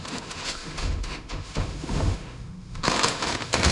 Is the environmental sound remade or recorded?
remade